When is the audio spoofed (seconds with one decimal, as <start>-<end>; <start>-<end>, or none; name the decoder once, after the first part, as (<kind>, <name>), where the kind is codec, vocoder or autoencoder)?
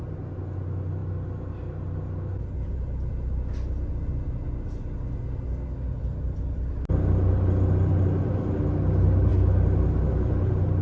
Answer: none